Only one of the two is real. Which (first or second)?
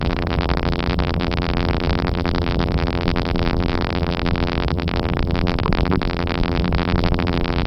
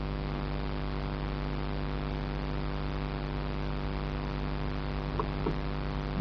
second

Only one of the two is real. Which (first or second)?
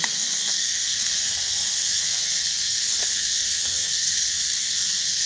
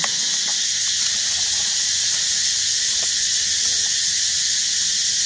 second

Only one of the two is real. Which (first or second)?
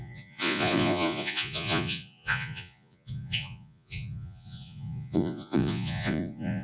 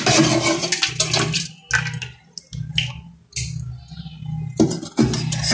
second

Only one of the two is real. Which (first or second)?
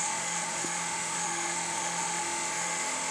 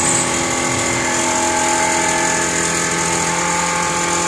second